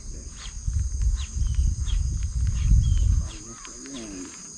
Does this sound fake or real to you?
real